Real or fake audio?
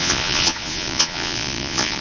fake